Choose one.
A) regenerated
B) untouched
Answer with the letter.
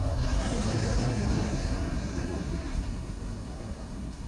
A